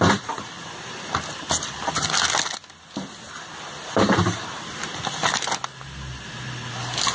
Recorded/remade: recorded